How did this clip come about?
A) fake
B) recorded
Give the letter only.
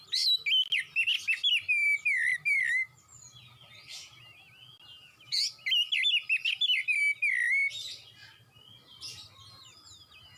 B